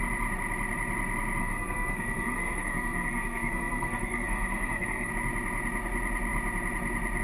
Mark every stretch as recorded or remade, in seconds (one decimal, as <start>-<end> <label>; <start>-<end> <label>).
0.0-1.4 recorded; 1.4-5.1 remade; 5.1-7.2 recorded